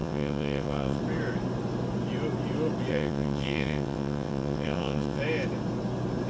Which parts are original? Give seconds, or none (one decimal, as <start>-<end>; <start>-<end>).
1.0-2.9; 5.2-6.3